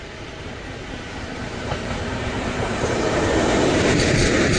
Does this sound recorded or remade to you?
remade